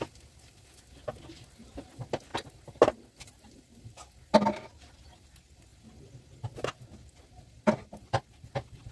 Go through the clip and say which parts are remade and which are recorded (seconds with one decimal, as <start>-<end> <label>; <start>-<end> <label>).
0.0-8.9 recorded